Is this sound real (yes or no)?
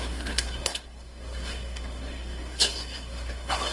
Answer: no